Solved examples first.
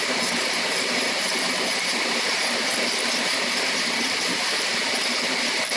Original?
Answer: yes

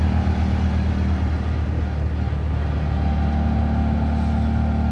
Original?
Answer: yes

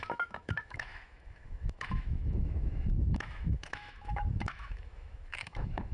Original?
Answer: no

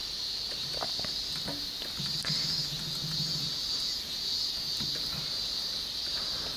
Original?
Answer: yes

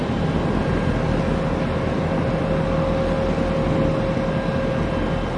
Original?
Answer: yes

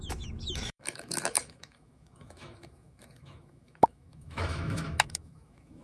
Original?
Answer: no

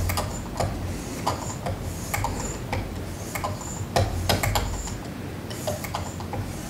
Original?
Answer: yes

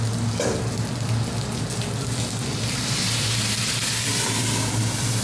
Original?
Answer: yes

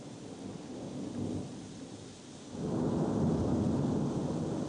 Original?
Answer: yes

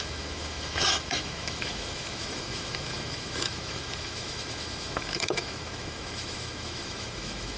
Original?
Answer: no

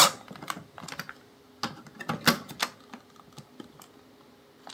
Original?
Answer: yes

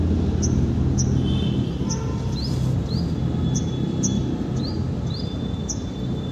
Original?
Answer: yes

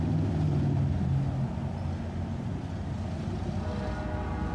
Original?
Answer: yes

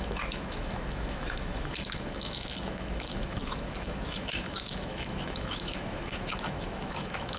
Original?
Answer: no